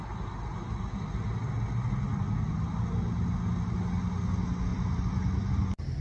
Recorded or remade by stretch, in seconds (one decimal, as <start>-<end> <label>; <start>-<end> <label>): 0.0-4.7 recorded; 4.7-5.6 remade; 5.6-6.0 recorded

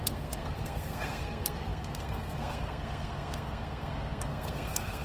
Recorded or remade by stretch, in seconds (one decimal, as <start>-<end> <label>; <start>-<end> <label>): 0.0-5.0 remade